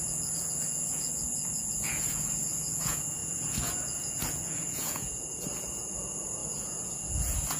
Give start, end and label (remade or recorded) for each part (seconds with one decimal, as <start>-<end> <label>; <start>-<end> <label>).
0.0-7.6 remade